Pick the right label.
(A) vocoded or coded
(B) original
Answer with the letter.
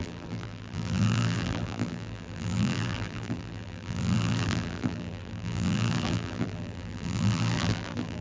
A